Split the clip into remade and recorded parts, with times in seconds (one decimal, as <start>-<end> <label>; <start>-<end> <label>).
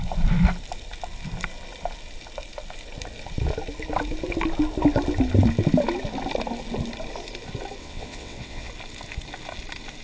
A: 0.0-7.8 recorded; 7.8-8.7 remade; 8.7-10.0 recorded